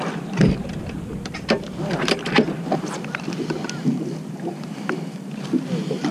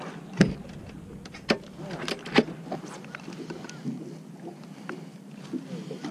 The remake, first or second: first